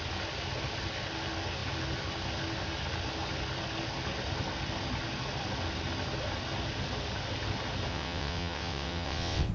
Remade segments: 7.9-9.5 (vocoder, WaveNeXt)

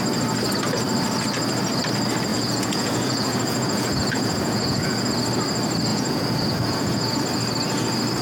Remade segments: 2.3-5.1 (vocoder, Vocos); 5.9-7.2

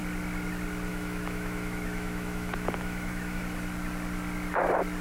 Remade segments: 0.9-3.4 (autoencoder, DAC-VAE)

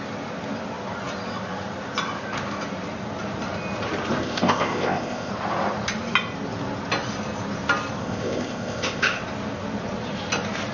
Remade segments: 4.2-5.3 (codec, ZipCodec); 8.0-9.2

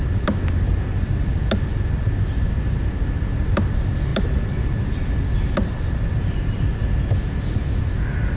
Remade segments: 4.1-6.6 (vocoder, BigVGAN v2)

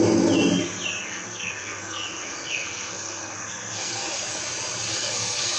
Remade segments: 1.0-4.4 (codec, SNAC); 4.9-5.6

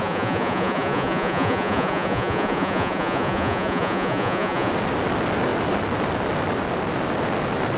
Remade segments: 0.0-4.7 (vocoder, Vocos)